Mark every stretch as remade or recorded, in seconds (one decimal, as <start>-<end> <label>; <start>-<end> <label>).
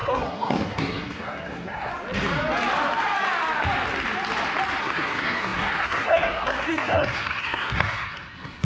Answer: 0.0-1.9 remade; 1.9-4.8 recorded; 4.8-8.6 remade